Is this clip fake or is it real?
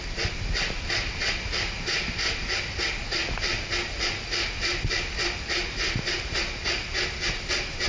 real